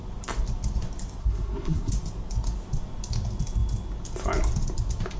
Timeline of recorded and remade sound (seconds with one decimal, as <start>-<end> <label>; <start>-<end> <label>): 0.0-1.2 recorded; 1.2-1.9 remade; 1.9-5.2 recorded